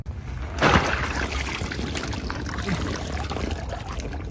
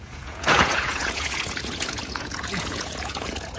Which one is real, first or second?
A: first